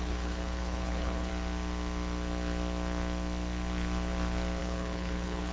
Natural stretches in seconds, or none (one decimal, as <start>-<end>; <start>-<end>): 1.3-4.6